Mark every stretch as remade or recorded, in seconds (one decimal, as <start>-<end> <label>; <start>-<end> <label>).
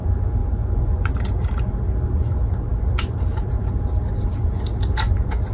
0.0-0.4 recorded; 0.4-1.1 remade; 1.1-5.5 recorded